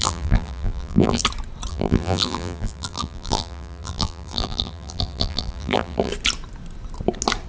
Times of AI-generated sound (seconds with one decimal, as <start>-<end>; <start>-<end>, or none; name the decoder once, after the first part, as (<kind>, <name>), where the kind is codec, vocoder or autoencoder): 0.0-1.2 (vocoder, BigVGAN v2); 1.7-6.1